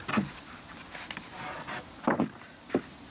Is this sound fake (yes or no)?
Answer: no